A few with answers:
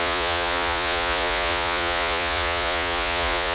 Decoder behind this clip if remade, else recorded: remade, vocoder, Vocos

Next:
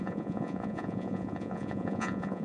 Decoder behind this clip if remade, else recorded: remade, vocoder, Vocos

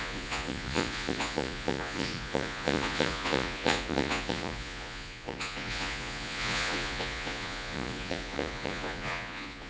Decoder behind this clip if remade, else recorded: remade, vocoder, Vocos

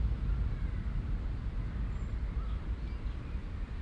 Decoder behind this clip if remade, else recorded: recorded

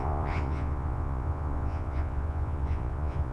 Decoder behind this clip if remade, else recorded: remade, vocoder, Vocos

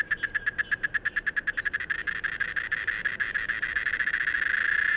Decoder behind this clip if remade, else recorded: recorded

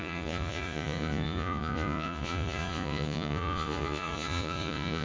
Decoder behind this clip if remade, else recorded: remade, vocoder, Vocos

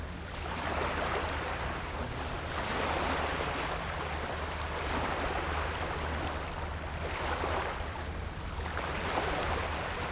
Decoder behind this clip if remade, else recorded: recorded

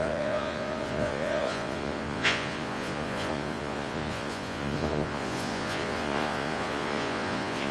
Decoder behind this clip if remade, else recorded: remade, vocoder, Vocos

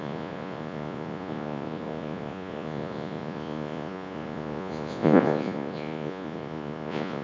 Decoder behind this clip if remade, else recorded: remade, vocoder, Vocos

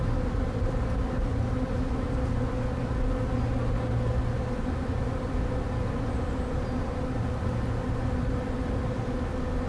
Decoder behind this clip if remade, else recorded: recorded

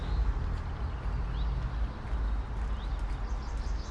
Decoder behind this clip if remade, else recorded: recorded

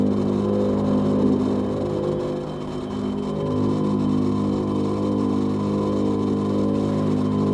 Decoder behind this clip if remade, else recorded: recorded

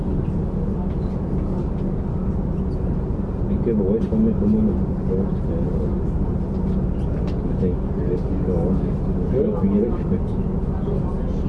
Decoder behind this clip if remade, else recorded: recorded